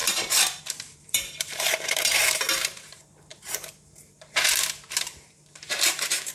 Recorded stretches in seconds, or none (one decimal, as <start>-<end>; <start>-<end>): none